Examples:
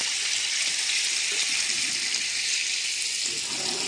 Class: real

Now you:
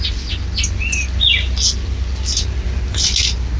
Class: real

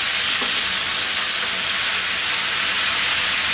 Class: real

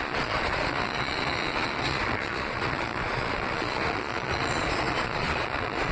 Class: fake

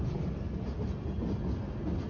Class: real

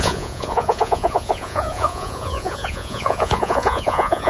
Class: fake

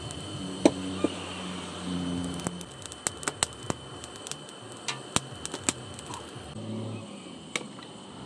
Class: real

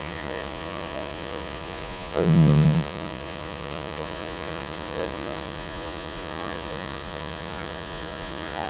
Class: fake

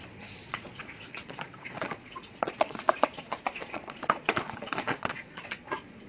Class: fake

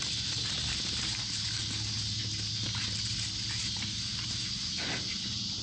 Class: real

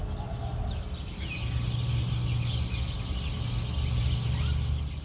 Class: real